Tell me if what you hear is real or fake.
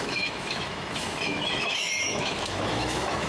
fake